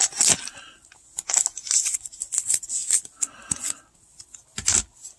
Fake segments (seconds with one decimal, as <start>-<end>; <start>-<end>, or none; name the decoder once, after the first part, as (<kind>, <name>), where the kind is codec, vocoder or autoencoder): none